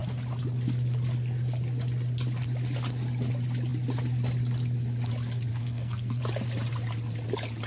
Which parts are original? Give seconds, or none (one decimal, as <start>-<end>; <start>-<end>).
0.0-5.5; 6.2-7.7

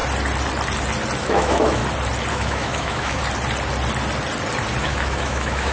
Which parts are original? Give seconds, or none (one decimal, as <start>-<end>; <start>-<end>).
0.0-1.2; 1.8-2.3; 3.2-4.8

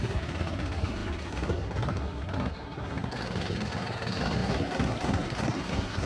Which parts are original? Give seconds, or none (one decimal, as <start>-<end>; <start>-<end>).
none

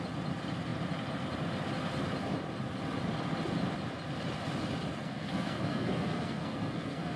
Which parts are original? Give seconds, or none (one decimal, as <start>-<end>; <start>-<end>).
0.0-5.0

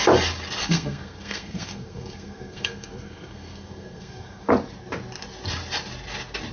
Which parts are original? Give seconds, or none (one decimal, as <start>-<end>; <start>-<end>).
0.0-0.6; 4.5-6.5